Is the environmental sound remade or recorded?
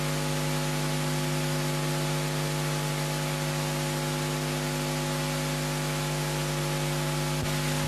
recorded